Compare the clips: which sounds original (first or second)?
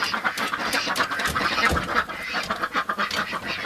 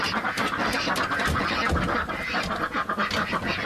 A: second